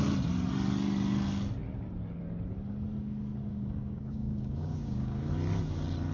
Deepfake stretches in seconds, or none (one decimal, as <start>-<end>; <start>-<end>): 3.5-5.3